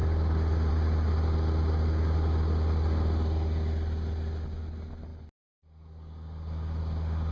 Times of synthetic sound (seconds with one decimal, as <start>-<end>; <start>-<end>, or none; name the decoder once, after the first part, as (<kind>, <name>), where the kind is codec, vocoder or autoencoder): none